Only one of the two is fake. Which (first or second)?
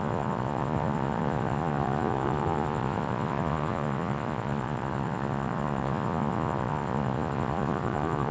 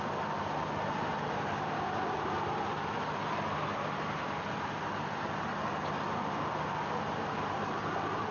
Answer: first